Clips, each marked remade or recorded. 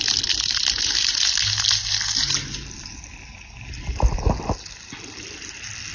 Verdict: recorded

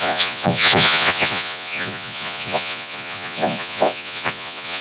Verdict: remade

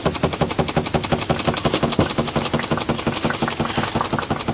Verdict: recorded